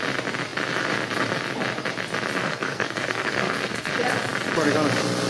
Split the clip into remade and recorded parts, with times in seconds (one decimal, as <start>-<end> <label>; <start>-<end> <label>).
0.0-2.4 recorded; 2.4-3.9 remade; 3.9-5.3 recorded